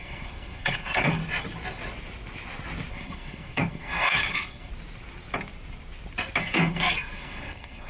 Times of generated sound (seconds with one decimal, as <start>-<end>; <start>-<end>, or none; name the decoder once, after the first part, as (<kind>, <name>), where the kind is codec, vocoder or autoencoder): 0.0-1.2 (codec, SNAC); 2.9-4.7; 6.4-7.9